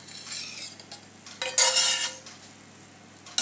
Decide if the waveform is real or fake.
real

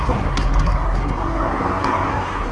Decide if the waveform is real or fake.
fake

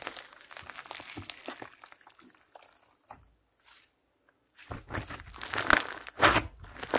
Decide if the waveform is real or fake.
real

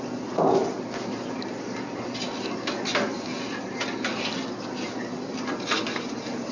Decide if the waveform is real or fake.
real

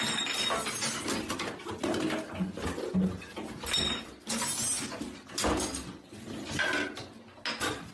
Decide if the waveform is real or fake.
real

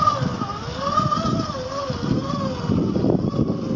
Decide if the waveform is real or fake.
real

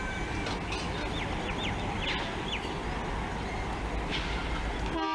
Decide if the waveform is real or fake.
real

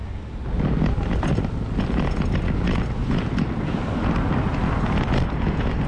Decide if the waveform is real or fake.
real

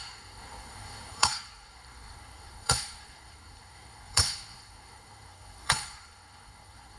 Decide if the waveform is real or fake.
fake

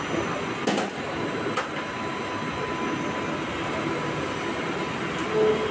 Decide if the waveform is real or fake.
real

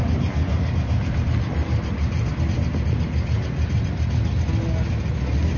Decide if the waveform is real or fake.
real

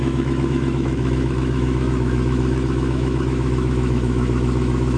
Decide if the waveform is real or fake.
fake